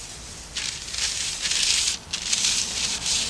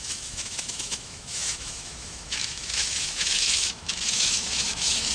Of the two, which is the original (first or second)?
first